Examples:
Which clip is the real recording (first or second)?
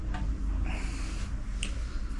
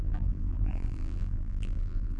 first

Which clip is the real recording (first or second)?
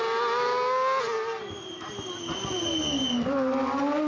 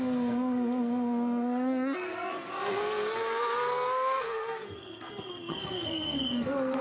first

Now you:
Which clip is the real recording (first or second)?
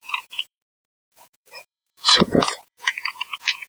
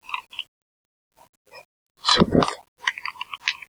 second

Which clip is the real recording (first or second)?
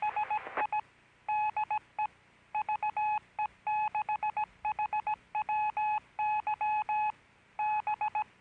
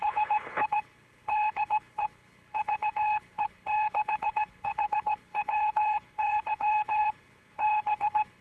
first